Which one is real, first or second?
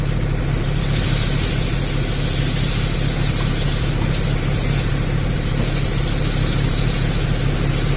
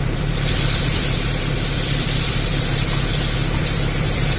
first